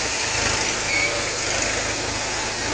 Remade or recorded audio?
recorded